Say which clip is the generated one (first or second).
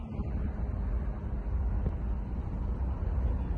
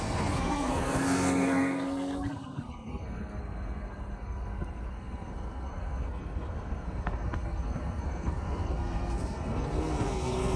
second